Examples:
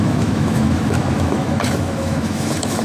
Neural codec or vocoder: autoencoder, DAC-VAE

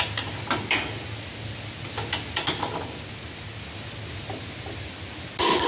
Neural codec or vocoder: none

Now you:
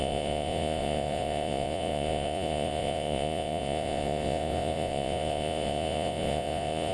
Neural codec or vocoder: vocoder, Vocos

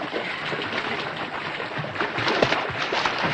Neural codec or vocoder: vocoder, BigVGAN v2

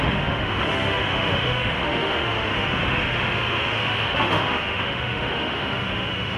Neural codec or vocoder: autoencoder, DAC-VAE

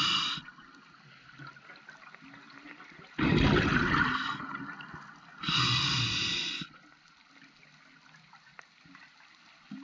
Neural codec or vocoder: none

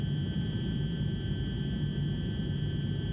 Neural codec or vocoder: none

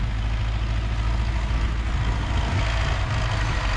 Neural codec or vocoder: none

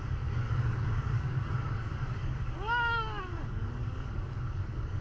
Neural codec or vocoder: codec, DAC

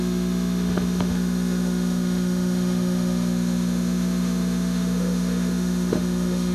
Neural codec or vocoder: autoencoder, DAC-VAE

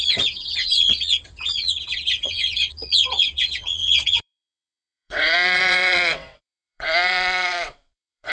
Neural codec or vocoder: vocoder, WaveNeXt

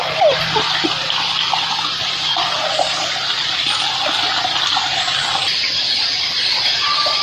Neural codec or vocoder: none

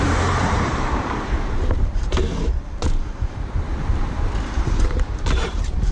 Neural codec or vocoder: vocoder, BigVGAN v2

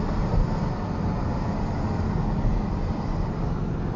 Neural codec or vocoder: none